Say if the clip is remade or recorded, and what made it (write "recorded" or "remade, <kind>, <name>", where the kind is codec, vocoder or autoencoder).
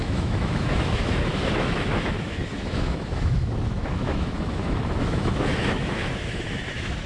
remade, autoencoder, DAC-VAE